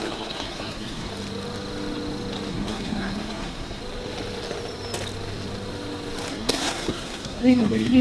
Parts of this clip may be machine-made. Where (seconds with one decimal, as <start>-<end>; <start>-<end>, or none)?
0.0-1.1; 2.5-3.8; 6.3-8.0